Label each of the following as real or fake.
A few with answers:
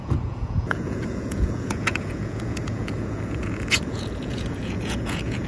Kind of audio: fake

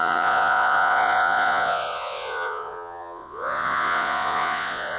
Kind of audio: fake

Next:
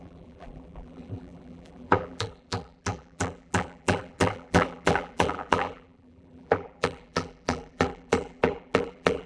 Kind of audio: fake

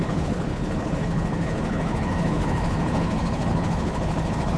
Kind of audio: fake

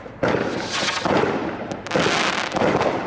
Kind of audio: real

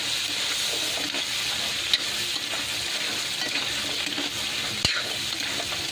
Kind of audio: real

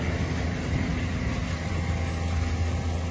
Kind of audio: real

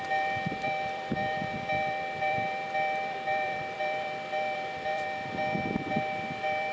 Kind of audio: fake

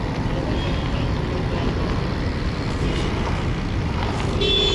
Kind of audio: real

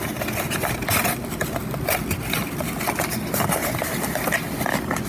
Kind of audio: real